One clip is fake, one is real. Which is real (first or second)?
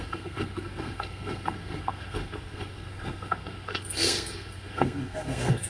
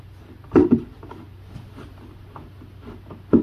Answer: second